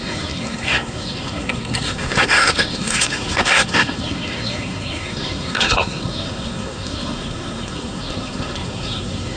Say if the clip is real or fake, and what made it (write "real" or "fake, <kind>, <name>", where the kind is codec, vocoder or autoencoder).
fake, codec, SNAC